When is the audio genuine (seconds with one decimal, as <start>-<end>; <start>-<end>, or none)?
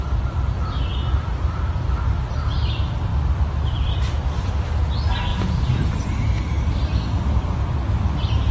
0.0-5.3; 5.9-8.5